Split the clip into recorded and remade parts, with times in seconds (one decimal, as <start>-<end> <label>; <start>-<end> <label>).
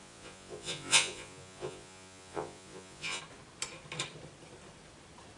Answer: 0.0-3.2 remade; 3.2-5.4 recorded